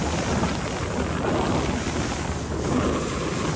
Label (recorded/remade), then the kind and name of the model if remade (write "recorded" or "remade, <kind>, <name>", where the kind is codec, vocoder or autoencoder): recorded